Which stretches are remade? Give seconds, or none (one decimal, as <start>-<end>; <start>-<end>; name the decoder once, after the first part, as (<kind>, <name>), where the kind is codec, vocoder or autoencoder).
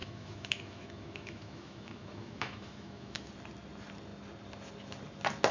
0.0-3.3 (autoencoder, DAC-VAE)